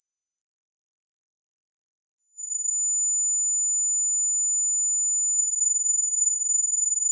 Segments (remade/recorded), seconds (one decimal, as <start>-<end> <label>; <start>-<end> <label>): 0.0-0.4 remade; 0.4-2.2 recorded; 2.2-2.7 remade; 2.7-5.4 recorded; 5.4-7.1 remade